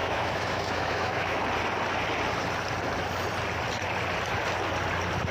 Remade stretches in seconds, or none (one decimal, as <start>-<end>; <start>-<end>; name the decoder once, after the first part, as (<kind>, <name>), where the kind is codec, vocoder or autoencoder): 0.0-1.4 (autoencoder, DAC-VAE)